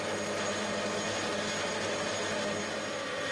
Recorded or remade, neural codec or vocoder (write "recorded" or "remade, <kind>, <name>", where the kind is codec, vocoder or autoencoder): recorded